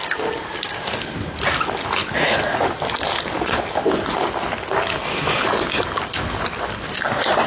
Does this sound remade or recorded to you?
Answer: recorded